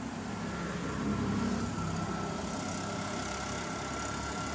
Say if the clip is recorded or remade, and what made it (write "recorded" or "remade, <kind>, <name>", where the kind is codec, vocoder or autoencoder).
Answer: recorded